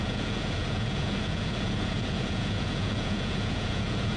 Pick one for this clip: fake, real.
fake